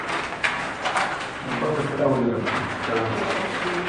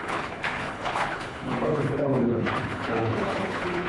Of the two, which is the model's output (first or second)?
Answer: second